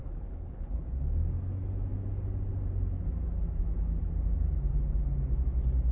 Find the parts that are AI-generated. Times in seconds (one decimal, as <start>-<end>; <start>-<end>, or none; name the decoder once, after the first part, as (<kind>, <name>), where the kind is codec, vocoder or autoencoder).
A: 0.0-0.8 (codec, HILCodec)